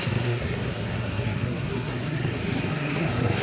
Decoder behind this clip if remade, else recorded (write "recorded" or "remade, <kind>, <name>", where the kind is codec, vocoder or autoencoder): remade, codec, SNAC